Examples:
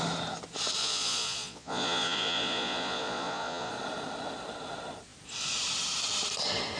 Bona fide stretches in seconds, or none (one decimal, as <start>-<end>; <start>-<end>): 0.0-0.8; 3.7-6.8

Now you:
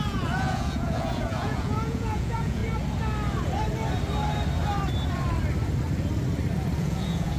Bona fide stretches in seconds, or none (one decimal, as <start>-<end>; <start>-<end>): 2.6-6.8

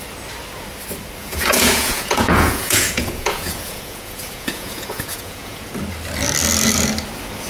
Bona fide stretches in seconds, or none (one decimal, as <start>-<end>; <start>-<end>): 0.0-1.2; 5.7-7.5

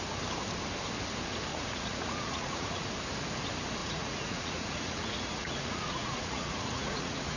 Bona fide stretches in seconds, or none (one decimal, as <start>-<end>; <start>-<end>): 0.0-1.5; 2.9-3.8

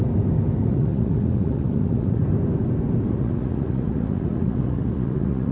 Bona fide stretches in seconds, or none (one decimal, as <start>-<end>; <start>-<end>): 0.0-0.6; 2.2-3.1

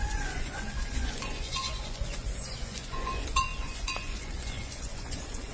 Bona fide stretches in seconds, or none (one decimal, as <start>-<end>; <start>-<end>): none

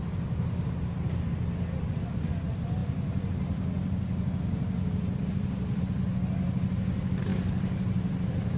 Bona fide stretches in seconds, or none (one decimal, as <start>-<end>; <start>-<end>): 0.0-8.6